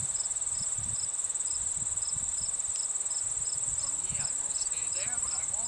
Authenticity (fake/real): real